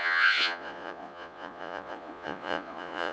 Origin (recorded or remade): remade